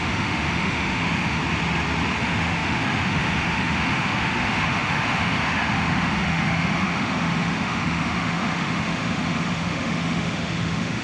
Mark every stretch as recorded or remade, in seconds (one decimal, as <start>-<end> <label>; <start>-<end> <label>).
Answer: 0.0-1.4 remade; 1.4-2.2 recorded; 2.2-11.0 remade